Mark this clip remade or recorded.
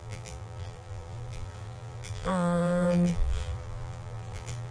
remade